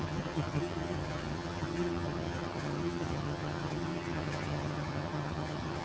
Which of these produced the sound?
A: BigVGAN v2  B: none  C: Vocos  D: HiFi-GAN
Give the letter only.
D